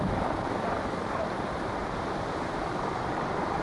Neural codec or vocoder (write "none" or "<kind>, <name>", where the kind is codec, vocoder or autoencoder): vocoder, BigVGAN v2